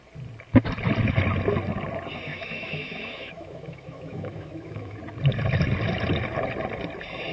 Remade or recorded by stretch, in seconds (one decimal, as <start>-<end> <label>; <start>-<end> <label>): 0.0-2.3 recorded; 2.3-5.0 remade; 5.0-7.3 recorded